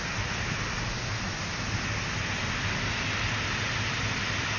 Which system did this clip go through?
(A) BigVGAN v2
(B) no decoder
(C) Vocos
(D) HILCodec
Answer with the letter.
B